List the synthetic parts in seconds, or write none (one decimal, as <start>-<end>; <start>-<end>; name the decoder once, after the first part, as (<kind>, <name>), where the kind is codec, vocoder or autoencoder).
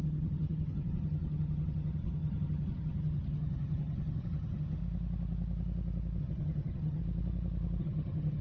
0.0-4.8 (vocoder, HiFi-GAN); 6.2-7.0; 7.8-8.4